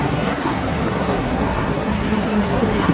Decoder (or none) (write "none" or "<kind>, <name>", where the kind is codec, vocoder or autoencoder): codec, SNAC